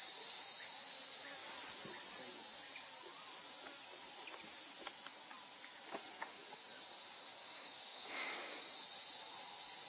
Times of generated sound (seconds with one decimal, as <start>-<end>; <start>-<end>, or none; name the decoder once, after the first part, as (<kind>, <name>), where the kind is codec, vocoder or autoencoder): 7.4-8.6 (codec, DAC)